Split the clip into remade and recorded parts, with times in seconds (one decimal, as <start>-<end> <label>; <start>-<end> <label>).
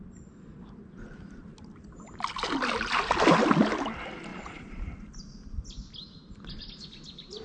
0.0-4.3 recorded; 4.3-4.8 remade; 4.8-7.4 recorded